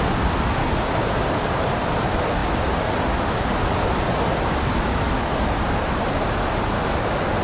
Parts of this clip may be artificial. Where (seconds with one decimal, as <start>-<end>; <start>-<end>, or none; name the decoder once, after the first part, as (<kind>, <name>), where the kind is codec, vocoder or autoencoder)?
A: 0.6-1.2 (codec, DAC)